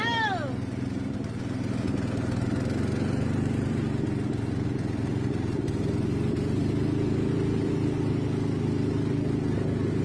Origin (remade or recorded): recorded